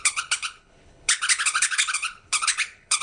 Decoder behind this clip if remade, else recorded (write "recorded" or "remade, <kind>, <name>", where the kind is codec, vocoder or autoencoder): remade, codec, HILCodec